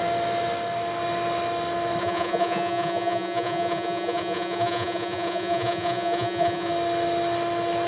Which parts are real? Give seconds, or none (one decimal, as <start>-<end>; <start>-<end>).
0.0-2.0; 6.7-7.9